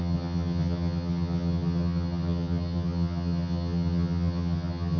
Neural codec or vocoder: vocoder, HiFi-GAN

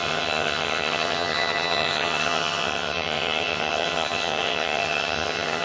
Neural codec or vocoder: vocoder, HiFi-GAN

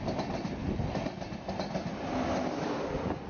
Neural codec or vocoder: none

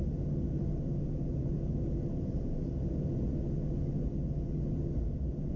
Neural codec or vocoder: none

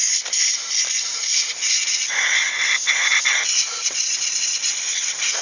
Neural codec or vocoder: none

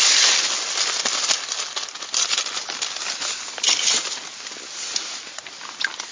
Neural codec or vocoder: none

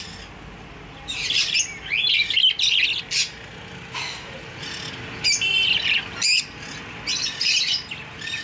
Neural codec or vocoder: none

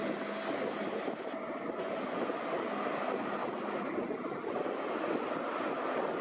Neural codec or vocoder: none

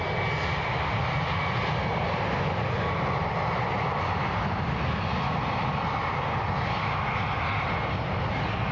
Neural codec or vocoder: none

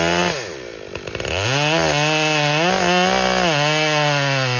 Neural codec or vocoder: none